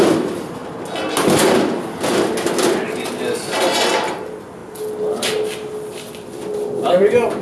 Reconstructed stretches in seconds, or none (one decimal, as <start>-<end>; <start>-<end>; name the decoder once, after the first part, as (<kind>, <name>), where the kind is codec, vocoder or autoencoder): 0.0-0.6 (vocoder, BigVGAN v2); 4.1-4.6; 6.9-7.4